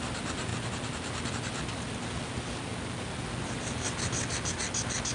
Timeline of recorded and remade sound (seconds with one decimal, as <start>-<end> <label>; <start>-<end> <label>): 0.0-5.1 recorded